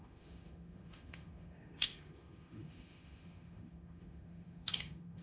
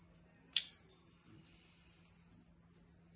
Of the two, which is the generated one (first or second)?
first